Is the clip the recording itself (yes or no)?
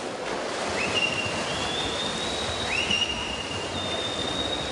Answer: yes